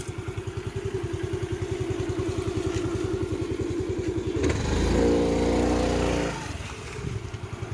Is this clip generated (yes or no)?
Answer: no